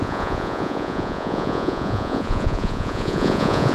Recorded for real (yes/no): no